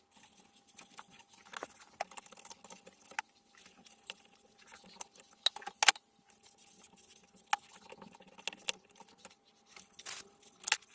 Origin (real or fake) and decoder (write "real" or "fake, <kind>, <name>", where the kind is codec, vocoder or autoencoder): real